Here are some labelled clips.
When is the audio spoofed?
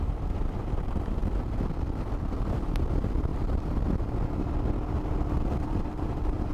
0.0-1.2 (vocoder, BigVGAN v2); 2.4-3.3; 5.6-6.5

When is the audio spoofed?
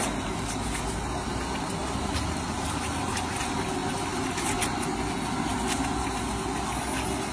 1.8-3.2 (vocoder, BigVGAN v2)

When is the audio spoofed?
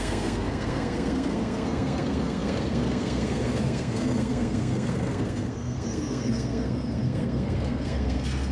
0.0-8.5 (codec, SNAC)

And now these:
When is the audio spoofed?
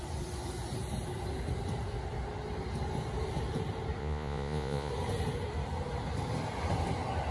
4.0-4.9 (vocoder, Vocos)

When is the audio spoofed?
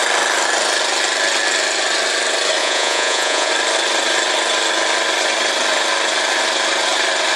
2.6-3.5 (vocoder, Vocos)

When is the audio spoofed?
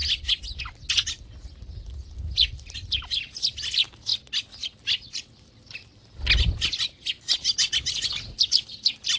none